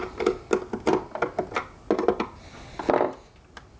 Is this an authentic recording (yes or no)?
yes